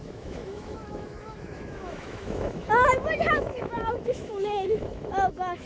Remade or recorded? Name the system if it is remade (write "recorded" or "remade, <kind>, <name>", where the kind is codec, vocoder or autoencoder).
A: remade, autoencoder, DAC-VAE